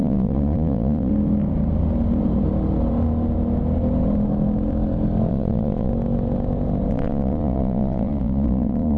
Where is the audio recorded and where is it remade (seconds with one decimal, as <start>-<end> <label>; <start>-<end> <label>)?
0.0-1.1 remade; 1.1-5.3 recorded; 5.3-5.9 remade; 5.9-6.9 recorded; 6.9-9.0 remade